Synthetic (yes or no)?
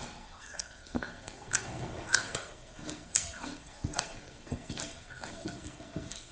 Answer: yes